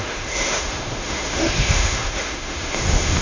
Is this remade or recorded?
remade